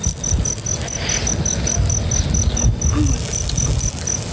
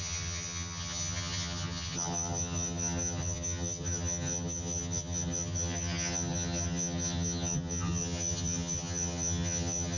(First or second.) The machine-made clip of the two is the second